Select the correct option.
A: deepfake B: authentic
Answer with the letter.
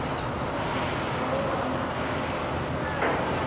B